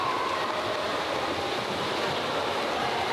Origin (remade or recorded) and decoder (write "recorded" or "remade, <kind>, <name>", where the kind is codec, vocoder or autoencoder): recorded